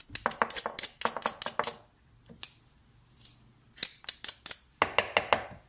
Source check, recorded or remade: recorded